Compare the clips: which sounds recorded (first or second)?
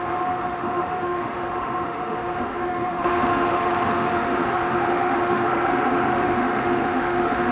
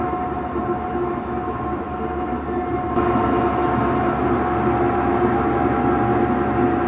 second